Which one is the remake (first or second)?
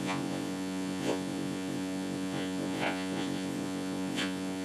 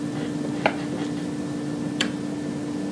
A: first